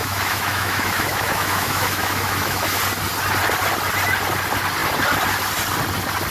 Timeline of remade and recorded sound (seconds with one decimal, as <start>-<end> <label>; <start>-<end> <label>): 0.0-2.8 remade; 2.8-6.3 recorded